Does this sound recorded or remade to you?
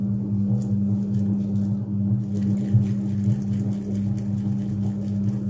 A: recorded